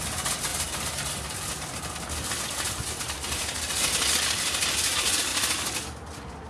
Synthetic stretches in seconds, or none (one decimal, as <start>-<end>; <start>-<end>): none